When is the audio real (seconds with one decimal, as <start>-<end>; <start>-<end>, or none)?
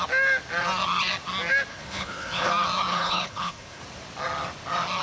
0.0-1.7; 2.5-2.9; 3.8-5.0